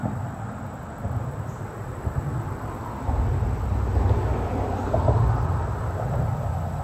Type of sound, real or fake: real